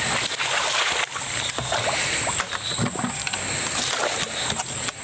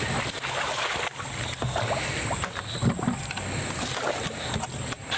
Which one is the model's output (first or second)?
second